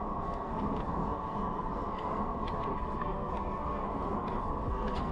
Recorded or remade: remade